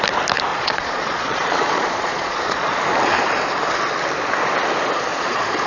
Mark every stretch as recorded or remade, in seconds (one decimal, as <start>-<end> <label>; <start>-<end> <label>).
0.0-0.5 recorded; 0.5-2.7 remade; 2.7-5.1 recorded; 5.1-5.7 remade